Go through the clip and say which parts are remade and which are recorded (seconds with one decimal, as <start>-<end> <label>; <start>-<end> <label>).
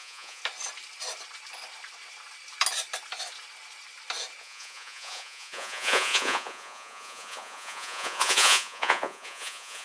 0.0-0.4 remade; 0.4-4.4 recorded; 4.4-9.8 remade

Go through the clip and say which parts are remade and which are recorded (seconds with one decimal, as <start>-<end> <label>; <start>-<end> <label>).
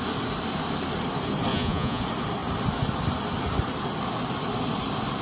0.0-1.5 recorded; 1.5-2.0 remade; 2.0-5.2 recorded